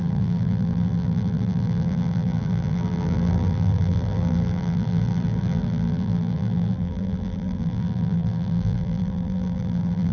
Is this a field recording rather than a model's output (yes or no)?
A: no